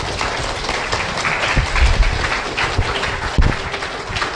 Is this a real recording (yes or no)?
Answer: yes